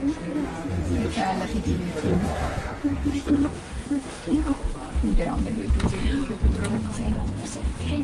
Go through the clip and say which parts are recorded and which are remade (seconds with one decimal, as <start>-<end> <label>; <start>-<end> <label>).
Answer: 0.0-2.1 recorded; 2.1-4.6 remade; 4.6-8.0 recorded